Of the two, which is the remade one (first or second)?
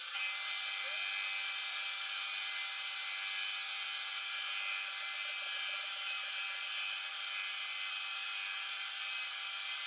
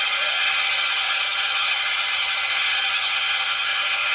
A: second